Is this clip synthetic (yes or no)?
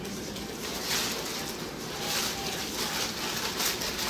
no